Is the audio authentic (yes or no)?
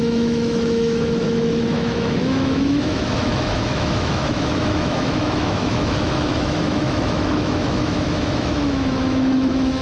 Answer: no